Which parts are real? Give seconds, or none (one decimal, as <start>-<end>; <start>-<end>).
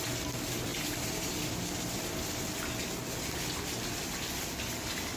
0.0-5.2